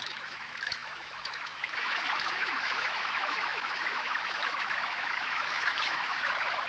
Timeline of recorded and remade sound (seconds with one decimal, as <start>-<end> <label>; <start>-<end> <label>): 0.0-6.7 remade